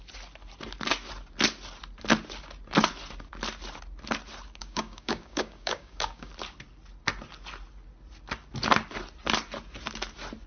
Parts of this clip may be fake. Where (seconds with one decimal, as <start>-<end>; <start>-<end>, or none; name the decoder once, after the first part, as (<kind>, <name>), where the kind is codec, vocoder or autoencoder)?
4.6-6.3 (codec, DAC)